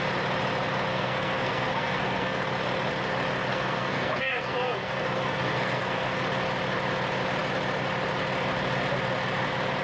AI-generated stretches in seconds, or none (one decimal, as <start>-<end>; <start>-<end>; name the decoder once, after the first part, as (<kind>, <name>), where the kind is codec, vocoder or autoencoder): 0.9-2.4 (codec, SNAC); 3.5-6.2